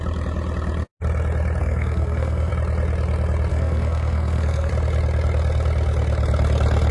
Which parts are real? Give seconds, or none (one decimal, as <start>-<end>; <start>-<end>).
0.0-1.6; 2.5-3.5; 4.7-6.9